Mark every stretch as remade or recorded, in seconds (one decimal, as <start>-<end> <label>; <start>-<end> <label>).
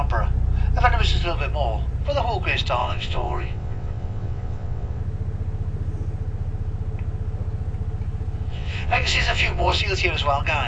0.0-2.8 recorded; 2.8-5.0 remade; 5.0-8.5 recorded; 8.5-9.8 remade; 9.8-10.7 recorded